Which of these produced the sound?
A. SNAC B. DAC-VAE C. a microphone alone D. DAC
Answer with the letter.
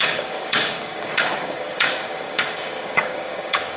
D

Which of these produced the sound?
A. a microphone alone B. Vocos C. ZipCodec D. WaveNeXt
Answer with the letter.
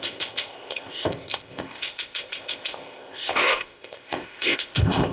C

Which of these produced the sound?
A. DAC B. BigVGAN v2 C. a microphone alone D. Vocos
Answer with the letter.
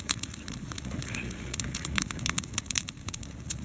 D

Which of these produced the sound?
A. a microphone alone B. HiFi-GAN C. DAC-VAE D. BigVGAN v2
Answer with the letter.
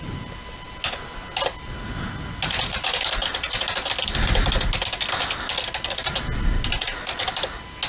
A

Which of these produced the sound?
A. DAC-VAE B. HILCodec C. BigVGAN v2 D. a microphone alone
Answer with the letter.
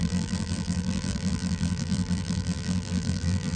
C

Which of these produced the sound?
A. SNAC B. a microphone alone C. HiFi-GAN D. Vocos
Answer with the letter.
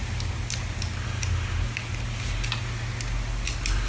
B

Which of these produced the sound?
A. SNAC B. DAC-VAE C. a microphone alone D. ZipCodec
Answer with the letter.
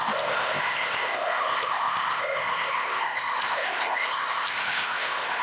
D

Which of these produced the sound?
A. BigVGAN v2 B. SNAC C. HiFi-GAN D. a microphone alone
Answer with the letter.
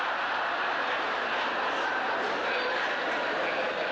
D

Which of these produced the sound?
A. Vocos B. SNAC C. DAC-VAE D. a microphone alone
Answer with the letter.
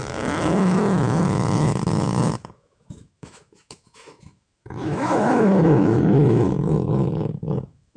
C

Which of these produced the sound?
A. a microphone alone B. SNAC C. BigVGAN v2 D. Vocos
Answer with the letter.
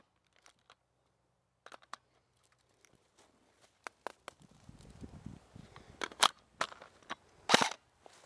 A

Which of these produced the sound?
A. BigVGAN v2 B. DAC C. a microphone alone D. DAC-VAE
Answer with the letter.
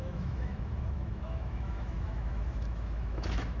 D